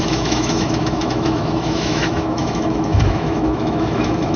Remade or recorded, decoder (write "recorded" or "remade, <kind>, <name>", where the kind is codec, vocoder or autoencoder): remade, autoencoder, DAC-VAE